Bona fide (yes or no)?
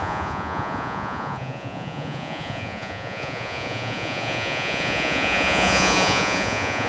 no